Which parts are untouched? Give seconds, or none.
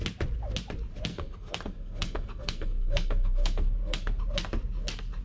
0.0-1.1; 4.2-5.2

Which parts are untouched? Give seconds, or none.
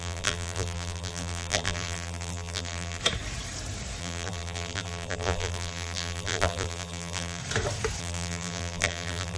3.0-4.0; 7.4-8.0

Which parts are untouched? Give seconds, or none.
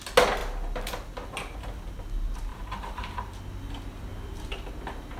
0.0-2.5; 3.4-4.1; 4.7-5.2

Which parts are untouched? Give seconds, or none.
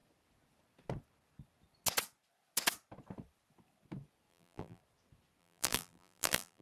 0.0-4.3; 4.8-5.4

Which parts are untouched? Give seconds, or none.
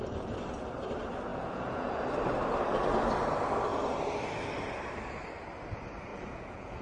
0.0-1.3; 2.0-6.1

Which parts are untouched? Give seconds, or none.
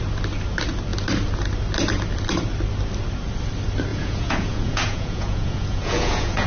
0.0-3.9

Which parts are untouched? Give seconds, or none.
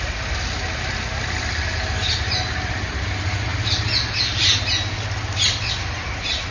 0.0-6.5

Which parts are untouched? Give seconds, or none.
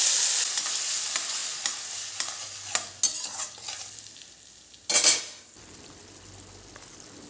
0.0-7.3